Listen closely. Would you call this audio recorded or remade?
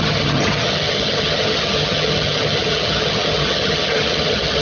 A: remade